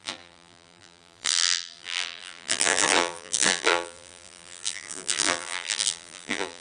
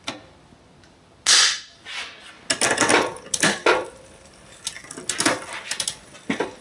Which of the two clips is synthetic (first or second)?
first